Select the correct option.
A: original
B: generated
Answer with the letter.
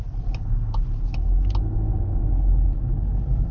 A